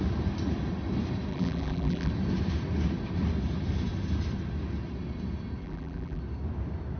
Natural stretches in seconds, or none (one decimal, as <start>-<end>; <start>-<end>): 0.0-1.3; 2.1-5.6; 6.2-7.0